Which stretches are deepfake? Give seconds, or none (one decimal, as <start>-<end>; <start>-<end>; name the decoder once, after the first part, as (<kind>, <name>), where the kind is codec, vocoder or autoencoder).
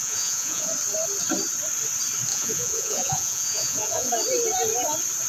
0.0-0.7 (vocoder, Vocos); 2.3-4.1